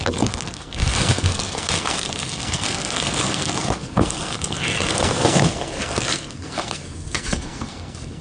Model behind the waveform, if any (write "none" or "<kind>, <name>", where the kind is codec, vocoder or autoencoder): codec, SNAC